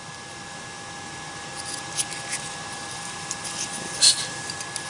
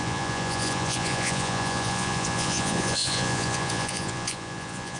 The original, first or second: first